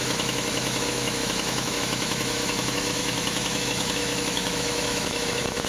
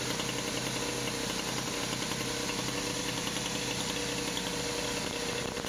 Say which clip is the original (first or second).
second